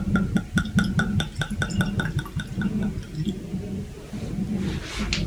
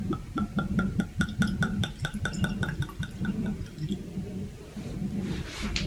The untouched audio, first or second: first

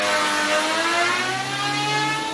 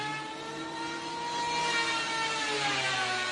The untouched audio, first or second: first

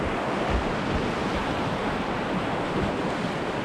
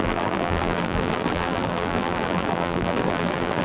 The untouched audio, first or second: first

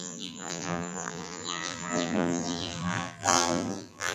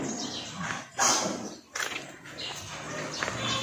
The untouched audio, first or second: second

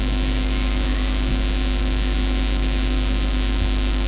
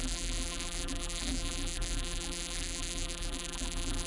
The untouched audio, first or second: first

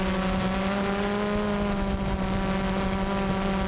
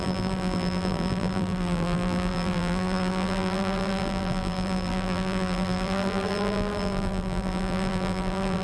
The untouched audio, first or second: first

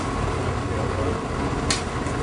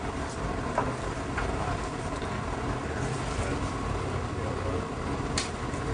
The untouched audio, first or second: first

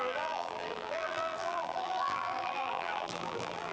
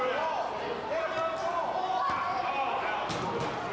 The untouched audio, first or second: second